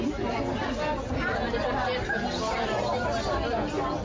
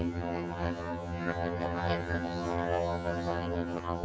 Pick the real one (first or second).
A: first